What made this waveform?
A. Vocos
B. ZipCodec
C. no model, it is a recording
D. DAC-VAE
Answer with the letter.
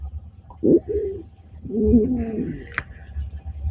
C